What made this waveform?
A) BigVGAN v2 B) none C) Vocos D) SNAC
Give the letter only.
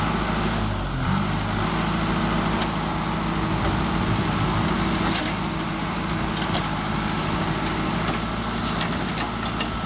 B